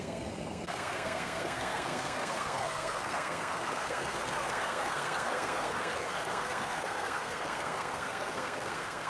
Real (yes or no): no